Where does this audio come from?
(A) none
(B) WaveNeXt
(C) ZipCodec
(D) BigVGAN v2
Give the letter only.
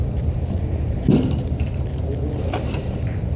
D